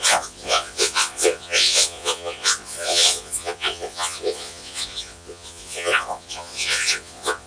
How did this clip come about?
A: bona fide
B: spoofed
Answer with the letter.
B